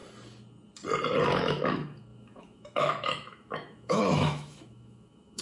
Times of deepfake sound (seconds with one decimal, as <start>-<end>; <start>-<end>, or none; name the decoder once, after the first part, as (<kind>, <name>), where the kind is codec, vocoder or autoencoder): 1.3-5.4 (autoencoder, DAC-VAE)